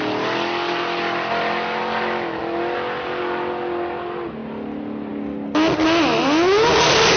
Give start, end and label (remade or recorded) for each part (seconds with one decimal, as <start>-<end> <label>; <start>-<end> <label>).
0.0-7.2 recorded